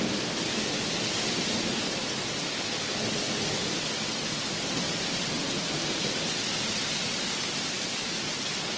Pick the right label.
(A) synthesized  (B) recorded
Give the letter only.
A